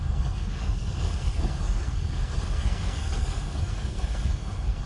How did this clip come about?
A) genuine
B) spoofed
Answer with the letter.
B